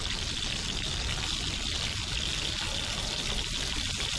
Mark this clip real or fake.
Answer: real